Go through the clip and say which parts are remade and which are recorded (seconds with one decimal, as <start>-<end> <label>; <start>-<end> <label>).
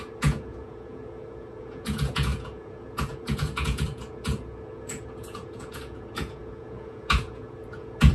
0.0-8.1 remade